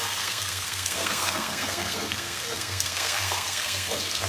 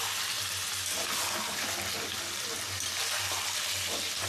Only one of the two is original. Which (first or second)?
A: second